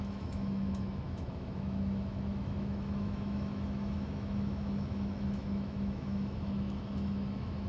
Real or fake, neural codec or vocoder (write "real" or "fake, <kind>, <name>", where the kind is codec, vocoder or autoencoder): fake, autoencoder, DAC-VAE